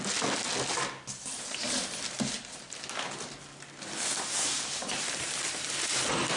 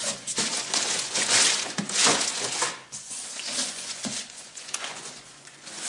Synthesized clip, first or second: second